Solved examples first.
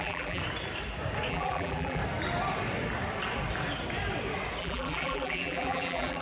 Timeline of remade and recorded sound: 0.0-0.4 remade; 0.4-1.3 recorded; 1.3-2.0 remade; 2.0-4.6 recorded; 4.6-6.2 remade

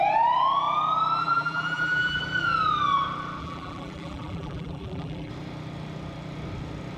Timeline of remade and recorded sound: 0.0-1.2 recorded; 1.2-2.2 remade; 2.2-3.4 recorded; 3.4-5.3 remade; 5.3-7.0 recorded

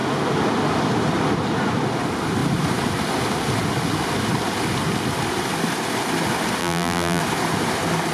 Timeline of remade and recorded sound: 0.0-6.6 recorded; 6.6-7.2 remade; 7.2-8.1 recorded

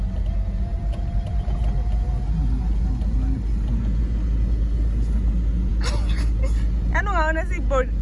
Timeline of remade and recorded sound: 0.0-0.7 recorded; 0.7-1.6 remade; 1.6-8.0 recorded

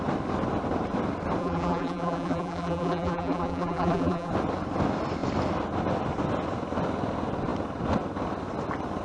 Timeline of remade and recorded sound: 0.0-1.4 recorded; 1.4-4.3 remade; 4.3-9.0 recorded

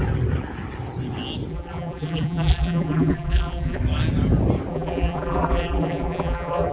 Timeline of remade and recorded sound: 0.0-1.5 recorded; 1.5-3.8 remade; 3.8-4.7 recorded; 4.7-6.7 remade